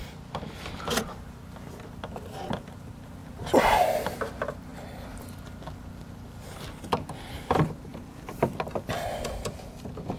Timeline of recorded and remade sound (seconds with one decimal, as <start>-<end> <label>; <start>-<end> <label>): 0.0-3.2 recorded; 3.2-3.9 remade; 3.9-7.9 recorded; 7.9-8.4 remade; 8.4-10.2 recorded